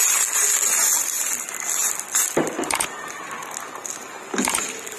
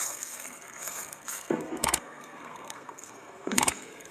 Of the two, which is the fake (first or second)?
second